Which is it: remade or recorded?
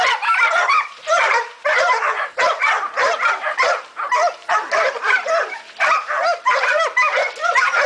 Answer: remade